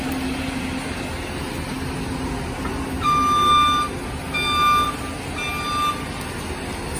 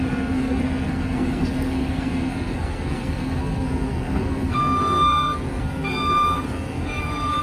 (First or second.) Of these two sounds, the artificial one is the second